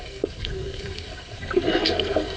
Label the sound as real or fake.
fake